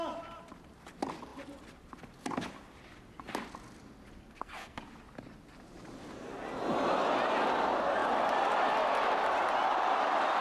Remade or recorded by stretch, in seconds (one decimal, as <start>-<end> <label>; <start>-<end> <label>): 0.0-4.2 recorded; 4.2-4.8 remade; 4.8-10.4 recorded